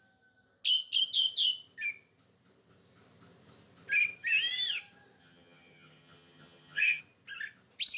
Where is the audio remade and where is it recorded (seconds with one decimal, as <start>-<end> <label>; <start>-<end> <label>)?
0.0-5.2 recorded; 5.2-7.0 remade; 7.0-8.0 recorded